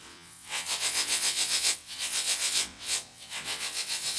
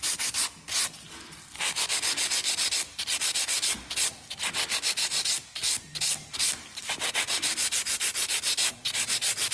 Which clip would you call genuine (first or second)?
second